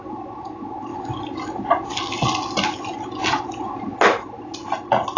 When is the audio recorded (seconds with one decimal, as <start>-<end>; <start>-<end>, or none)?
0.0-5.2